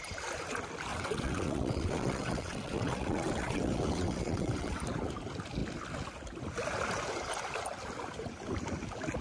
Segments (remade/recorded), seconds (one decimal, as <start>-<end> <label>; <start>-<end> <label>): 0.0-0.9 recorded; 0.9-4.8 remade; 4.8-9.2 recorded